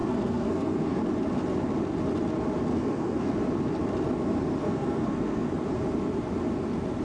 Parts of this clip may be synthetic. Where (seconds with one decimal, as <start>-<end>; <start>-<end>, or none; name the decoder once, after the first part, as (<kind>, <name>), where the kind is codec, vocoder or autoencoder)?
0.0-1.0 (codec, SNAC); 2.7-3.3; 4.6-5.5